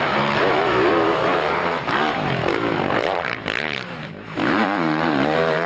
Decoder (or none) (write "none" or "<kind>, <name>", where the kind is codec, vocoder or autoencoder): vocoder, BigVGAN v2